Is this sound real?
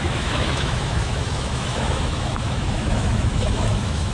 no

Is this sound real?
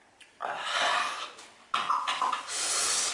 yes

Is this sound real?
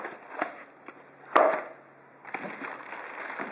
yes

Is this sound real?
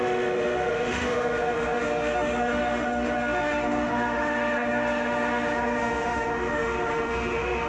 no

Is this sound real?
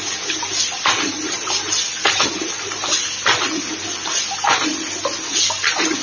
yes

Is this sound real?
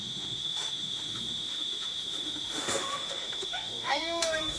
no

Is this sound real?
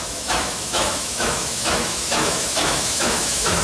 no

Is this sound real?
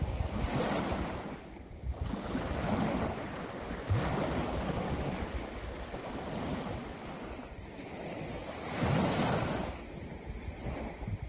yes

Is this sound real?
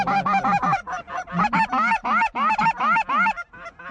yes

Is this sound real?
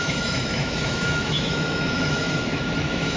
no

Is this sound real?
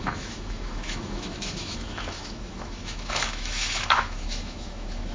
no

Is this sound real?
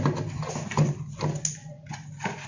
yes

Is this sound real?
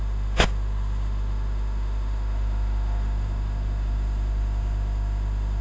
no